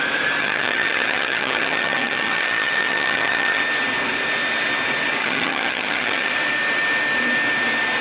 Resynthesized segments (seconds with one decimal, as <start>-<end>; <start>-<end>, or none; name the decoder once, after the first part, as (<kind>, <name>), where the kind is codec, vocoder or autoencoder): 0.4-3.6 (vocoder, HiFi-GAN); 5.2-6.3